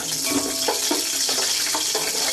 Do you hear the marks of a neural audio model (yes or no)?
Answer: no